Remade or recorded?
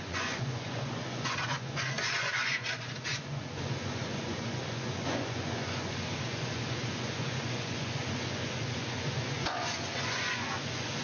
remade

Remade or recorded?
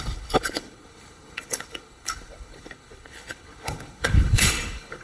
remade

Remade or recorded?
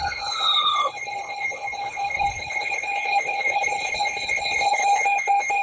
remade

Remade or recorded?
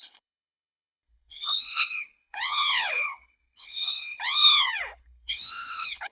remade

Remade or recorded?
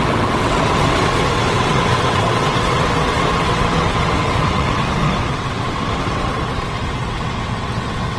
remade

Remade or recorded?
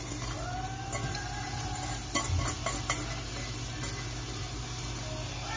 recorded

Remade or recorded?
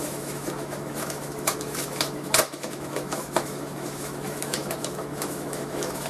remade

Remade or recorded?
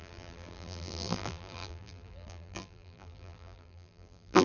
remade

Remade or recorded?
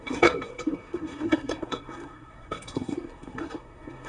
remade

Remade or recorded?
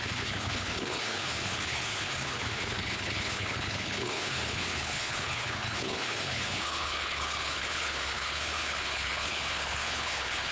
remade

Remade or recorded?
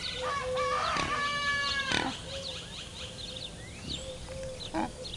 recorded